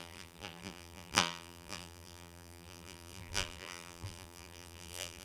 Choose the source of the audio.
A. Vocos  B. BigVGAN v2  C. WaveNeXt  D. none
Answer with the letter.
B